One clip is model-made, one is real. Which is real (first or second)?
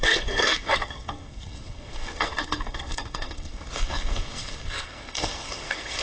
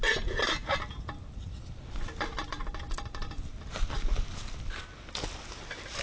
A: second